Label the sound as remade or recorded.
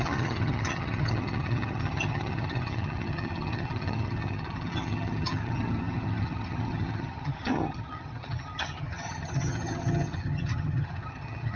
remade